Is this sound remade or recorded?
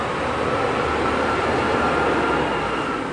recorded